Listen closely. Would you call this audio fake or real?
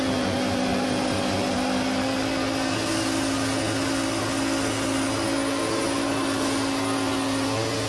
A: real